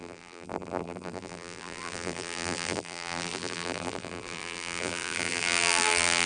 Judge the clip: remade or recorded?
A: remade